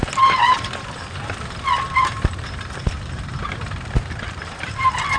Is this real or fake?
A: fake